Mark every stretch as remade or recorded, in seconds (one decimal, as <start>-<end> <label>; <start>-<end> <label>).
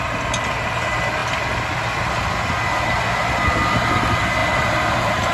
0.0-4.4 recorded; 4.4-5.3 remade